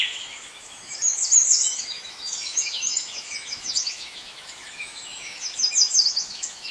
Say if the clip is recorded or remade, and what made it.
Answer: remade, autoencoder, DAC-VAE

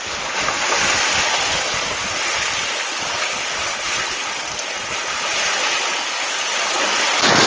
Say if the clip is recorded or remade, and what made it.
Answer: recorded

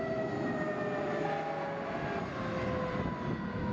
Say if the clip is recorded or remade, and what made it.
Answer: recorded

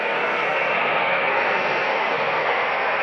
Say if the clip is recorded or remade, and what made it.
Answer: remade, codec, SNAC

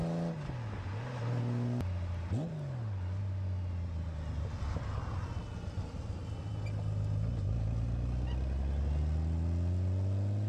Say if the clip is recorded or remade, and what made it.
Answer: recorded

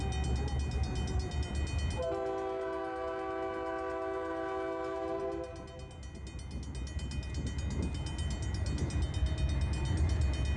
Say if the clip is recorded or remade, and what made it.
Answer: recorded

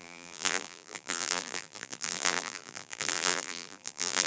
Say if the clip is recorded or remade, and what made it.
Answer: remade, vocoder, BigVGAN v2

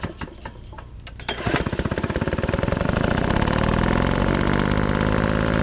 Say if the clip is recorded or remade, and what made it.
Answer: remade, vocoder, BigVGAN v2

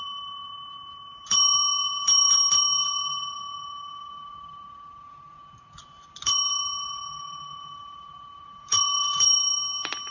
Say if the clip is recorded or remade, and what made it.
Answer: remade, vocoder, BigVGAN v2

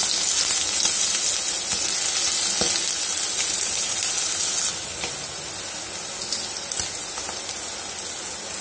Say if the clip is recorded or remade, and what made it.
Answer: recorded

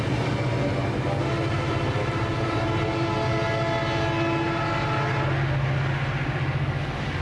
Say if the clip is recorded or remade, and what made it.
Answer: recorded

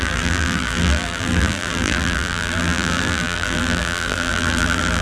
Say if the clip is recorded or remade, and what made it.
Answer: remade, vocoder, BigVGAN v2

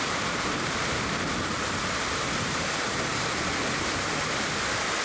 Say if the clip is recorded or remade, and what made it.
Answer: remade, vocoder, BigVGAN v2